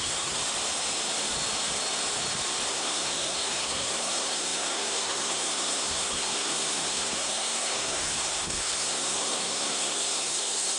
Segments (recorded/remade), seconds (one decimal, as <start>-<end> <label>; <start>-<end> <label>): 0.0-0.4 remade; 0.4-2.7 recorded; 2.7-10.8 remade